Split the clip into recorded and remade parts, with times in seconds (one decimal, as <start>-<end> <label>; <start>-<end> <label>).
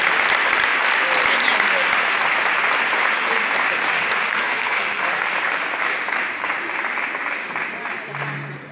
0.0-4.3 recorded; 4.3-5.0 remade; 5.0-8.7 recorded